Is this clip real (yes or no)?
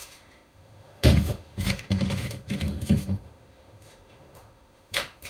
no